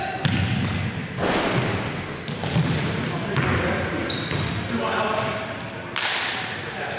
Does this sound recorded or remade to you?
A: recorded